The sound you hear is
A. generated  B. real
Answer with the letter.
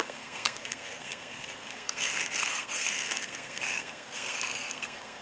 A